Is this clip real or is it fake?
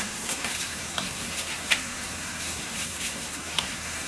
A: fake